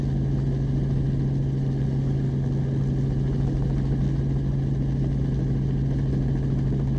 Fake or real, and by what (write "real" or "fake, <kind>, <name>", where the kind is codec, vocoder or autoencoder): real